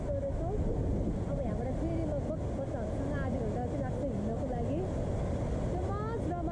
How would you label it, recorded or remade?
recorded